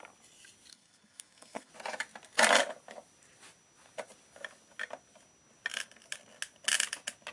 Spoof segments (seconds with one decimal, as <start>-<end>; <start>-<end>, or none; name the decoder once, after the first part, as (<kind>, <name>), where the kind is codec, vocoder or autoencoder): 0.7-1.7 (codec, SNAC)